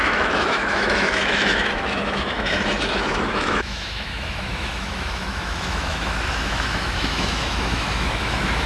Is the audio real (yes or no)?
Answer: no